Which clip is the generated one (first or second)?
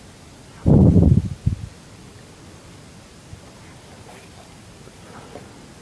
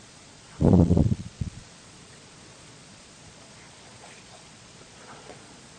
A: second